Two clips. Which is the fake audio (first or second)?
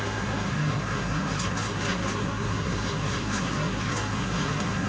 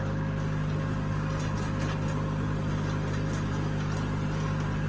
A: first